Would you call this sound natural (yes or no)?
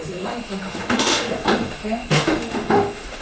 no